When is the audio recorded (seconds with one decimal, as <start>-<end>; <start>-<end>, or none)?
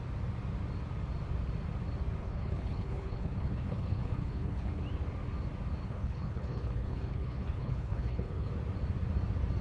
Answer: 0.0-2.2; 4.8-5.8; 8.5-9.6